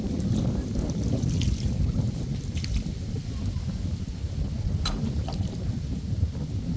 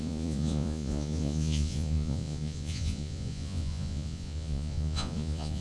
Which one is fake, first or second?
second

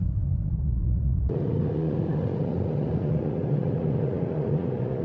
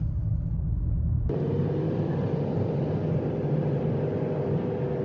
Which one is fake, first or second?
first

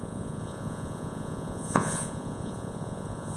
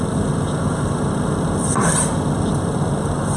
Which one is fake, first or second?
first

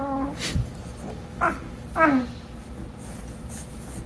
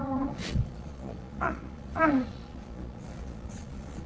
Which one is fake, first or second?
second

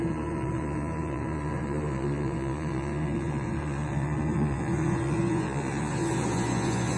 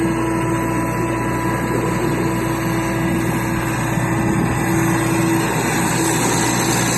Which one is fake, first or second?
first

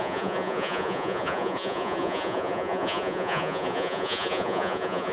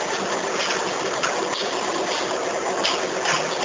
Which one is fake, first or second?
first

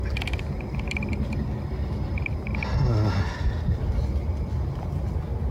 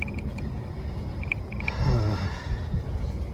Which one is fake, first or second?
second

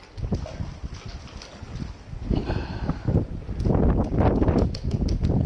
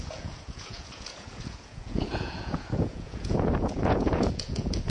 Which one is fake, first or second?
second